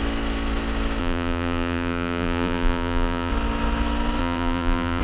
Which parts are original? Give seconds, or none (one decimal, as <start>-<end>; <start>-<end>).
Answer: 0.0-1.0; 3.3-4.2